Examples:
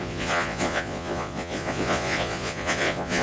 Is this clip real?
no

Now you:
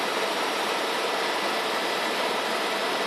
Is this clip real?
yes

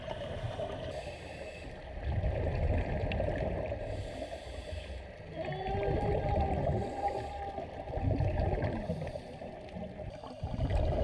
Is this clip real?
yes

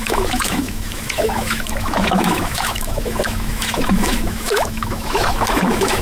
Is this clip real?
no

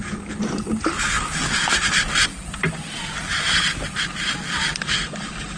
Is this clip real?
yes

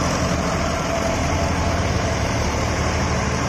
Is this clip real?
no